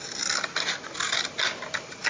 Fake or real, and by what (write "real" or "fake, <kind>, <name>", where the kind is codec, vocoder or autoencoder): real